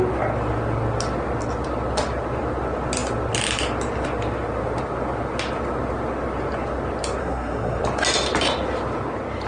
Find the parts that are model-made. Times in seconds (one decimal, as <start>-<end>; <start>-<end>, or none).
7.2-7.8